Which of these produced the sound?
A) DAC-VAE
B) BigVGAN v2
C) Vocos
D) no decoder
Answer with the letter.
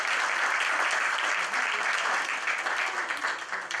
D